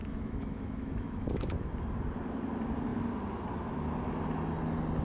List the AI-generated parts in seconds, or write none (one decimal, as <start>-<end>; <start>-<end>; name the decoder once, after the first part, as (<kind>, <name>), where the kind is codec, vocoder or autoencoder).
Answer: 0.0-1.7 (autoencoder, DAC-VAE)